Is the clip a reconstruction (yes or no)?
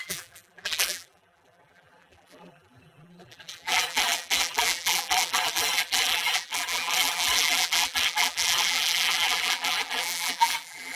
yes